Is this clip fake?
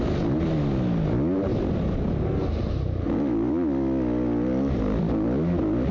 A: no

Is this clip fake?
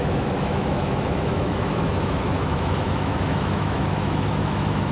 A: yes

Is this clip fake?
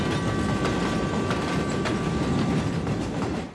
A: no